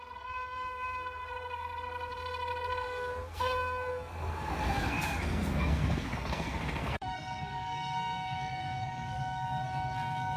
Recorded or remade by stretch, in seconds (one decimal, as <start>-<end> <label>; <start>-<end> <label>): 0.0-10.4 remade